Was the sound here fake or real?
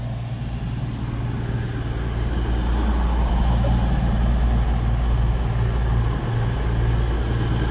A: real